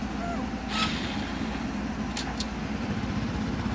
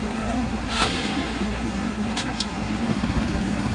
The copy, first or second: second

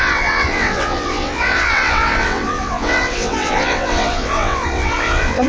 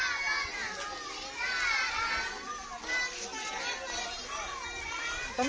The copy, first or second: first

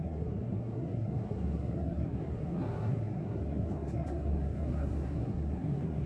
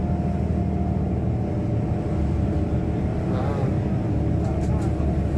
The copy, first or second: first